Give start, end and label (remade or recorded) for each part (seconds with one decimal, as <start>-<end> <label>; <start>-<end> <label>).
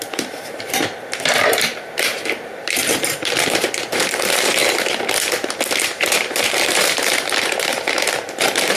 0.0-4.6 remade; 4.6-5.8 recorded; 5.8-8.8 remade